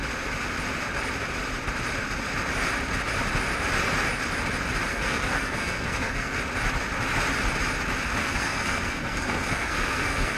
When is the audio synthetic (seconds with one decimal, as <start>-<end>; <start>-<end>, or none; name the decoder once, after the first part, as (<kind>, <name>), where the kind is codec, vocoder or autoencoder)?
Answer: 4.9-6.4 (codec, SNAC); 8.2-10.4